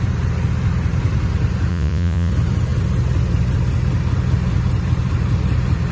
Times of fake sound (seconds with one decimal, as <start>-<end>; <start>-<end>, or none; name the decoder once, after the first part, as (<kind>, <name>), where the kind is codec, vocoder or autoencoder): 1.7-2.3 (vocoder, Vocos)